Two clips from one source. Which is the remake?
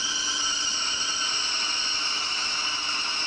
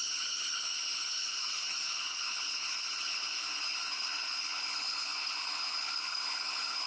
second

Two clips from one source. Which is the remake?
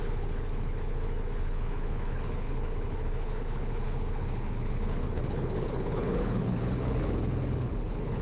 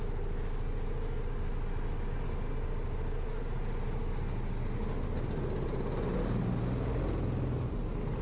first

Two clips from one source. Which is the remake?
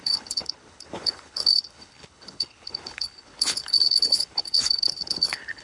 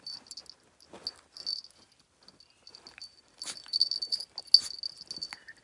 first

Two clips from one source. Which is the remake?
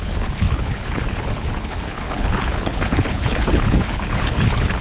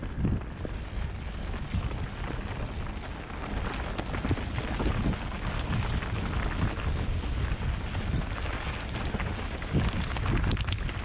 first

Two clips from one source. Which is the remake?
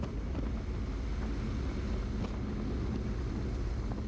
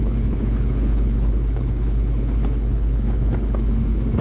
second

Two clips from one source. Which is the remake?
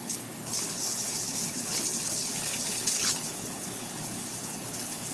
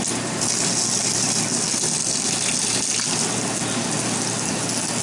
first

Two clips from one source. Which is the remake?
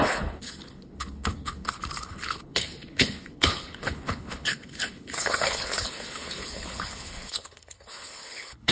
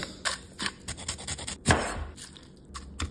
first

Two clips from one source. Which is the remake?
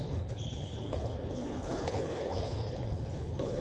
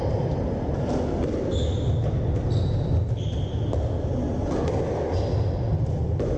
first